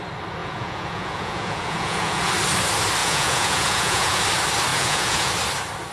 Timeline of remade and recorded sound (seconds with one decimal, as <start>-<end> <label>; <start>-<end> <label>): 0.0-0.4 recorded; 0.4-2.3 remade; 2.3-3.0 recorded; 3.0-4.2 remade; 4.2-4.7 recorded; 4.7-5.3 remade; 5.3-5.9 recorded